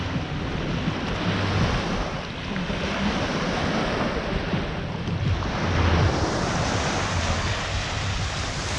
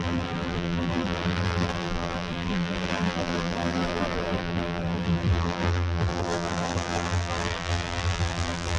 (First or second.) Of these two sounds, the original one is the first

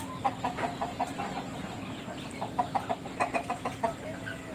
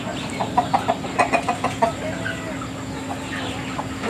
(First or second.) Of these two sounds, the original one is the second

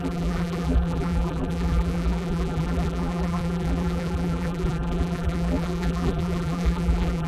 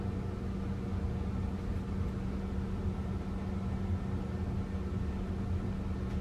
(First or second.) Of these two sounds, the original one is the second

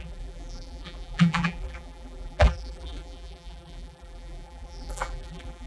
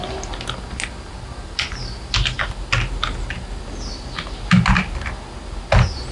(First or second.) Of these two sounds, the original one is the second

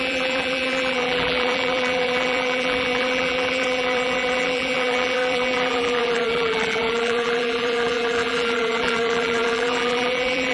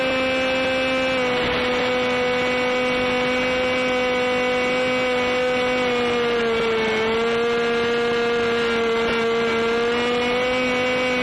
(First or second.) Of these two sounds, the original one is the second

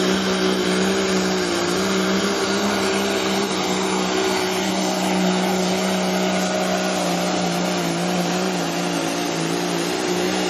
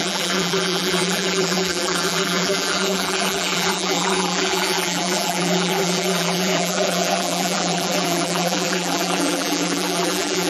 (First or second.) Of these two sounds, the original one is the first